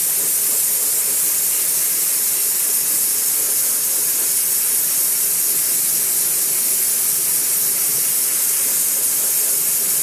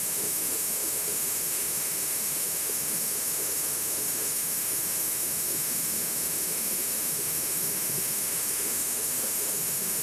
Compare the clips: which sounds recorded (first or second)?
first